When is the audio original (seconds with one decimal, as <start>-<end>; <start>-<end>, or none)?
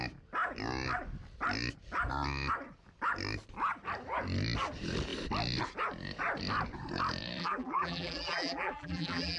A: 0.0-7.4